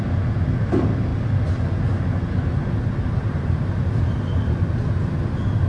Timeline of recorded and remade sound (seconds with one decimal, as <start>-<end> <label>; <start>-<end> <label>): 0.0-5.7 recorded